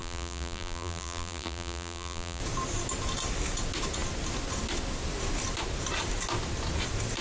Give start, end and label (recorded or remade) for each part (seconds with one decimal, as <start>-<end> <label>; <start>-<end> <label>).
0.0-2.4 remade; 2.4-7.2 recorded